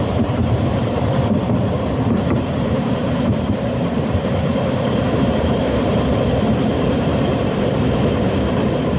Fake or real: fake